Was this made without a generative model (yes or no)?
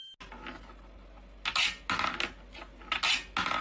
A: yes